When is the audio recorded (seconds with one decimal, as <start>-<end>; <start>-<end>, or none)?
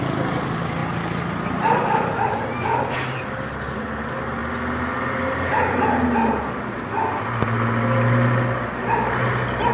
0.0-0.8; 1.5-4.4; 5.5-7.1